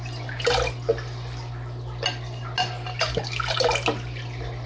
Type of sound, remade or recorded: recorded